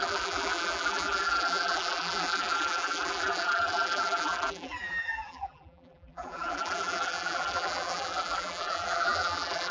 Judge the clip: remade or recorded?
remade